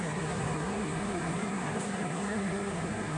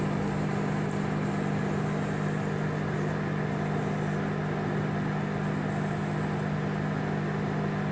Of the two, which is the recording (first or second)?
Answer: second